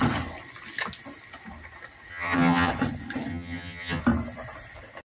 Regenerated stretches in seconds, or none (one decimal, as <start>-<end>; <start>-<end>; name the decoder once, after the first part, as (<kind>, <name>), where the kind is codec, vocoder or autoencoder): 2.1-2.7 (vocoder, HiFi-GAN); 3.3-4.0